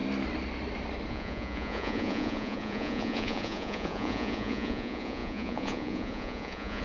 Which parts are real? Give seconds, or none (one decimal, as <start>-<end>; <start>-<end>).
0.0-1.1